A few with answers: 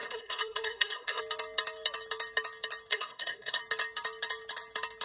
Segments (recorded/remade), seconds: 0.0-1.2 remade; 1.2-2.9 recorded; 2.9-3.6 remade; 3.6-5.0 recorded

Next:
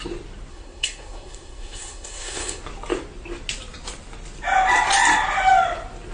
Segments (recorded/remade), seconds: 0.0-0.5 recorded; 0.5-2.6 remade; 2.6-6.1 recorded

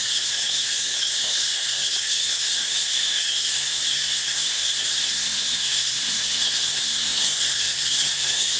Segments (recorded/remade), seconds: 0.0-8.6 remade

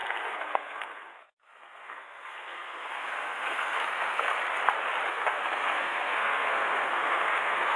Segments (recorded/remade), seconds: 0.0-4.3 remade; 4.3-5.1 recorded; 5.1-7.8 remade

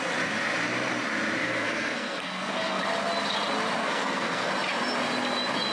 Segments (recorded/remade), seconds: 0.0-1.4 recorded; 1.4-2.8 remade; 2.8-3.8 recorded; 3.8-4.5 remade; 4.5-5.7 recorded

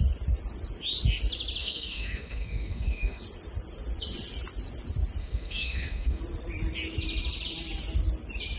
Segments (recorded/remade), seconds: 0.0-1.6 recorded; 1.6-3.2 remade; 3.2-5.2 recorded; 5.2-6.2 remade; 6.2-8.6 recorded

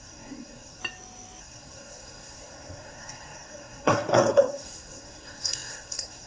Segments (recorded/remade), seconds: 0.0-0.8 remade; 0.8-1.4 recorded; 1.4-6.3 remade

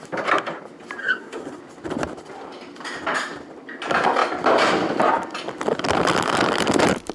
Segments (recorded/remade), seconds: 0.0-1.0 recorded; 1.0-1.6 remade; 1.6-7.1 recorded